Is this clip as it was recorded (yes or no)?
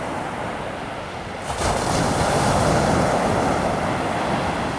yes